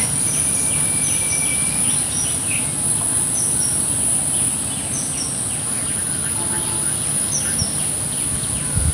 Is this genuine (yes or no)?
yes